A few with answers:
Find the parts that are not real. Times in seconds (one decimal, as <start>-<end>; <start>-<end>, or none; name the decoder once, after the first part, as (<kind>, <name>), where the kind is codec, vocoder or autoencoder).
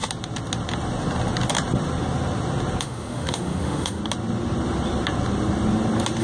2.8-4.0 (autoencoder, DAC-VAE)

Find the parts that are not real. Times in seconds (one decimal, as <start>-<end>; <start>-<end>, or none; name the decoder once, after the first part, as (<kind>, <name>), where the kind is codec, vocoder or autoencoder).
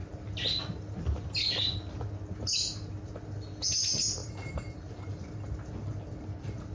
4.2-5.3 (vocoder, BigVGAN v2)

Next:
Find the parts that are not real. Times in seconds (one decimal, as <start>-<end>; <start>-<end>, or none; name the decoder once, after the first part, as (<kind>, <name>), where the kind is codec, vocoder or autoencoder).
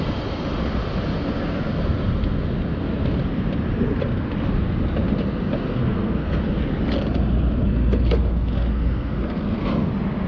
5.7-6.4 (codec, SNAC); 7.6-9.9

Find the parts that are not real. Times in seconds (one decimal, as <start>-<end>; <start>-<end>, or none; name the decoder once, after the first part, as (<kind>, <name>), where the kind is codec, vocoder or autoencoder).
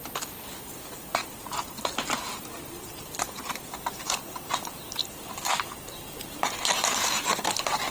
1.2-3.7 (vocoder, BigVGAN v2); 5.0-6.4